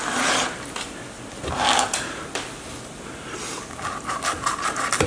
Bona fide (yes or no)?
yes